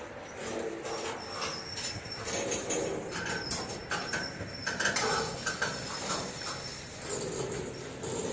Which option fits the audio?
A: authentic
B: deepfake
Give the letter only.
A